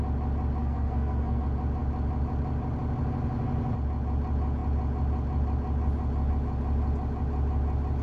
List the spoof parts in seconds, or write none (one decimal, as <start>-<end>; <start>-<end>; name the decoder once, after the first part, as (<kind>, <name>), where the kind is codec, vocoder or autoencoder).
0.6-1.4 (codec, SNAC)